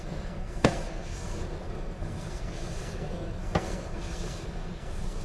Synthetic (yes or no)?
yes